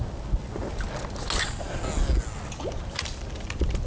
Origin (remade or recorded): recorded